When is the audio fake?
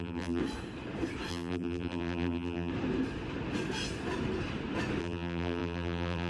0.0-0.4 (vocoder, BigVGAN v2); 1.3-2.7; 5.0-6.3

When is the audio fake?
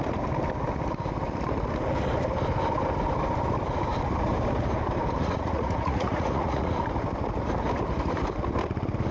5.2-6.8 (vocoder, Vocos)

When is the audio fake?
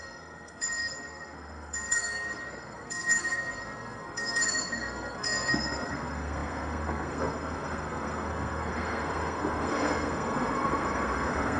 0.0-11.6 (codec, SNAC)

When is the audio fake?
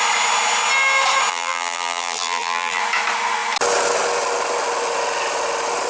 1.3-2.8 (vocoder, BigVGAN v2)